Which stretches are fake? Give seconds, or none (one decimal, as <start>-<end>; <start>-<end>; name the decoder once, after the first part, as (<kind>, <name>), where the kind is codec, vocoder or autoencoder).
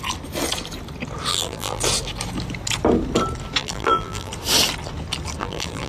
1.3-1.8 (vocoder, BigVGAN v2); 3.6-4.3; 5.4-5.9